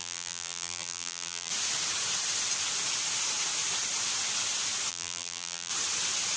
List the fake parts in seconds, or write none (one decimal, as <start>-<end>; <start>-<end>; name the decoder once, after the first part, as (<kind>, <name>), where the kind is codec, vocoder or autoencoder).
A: 0.0-1.5 (vocoder, BigVGAN v2); 4.9-5.7